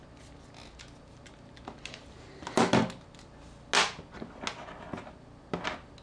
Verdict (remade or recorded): recorded